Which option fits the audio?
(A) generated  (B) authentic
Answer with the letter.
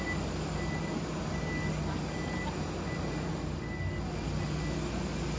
B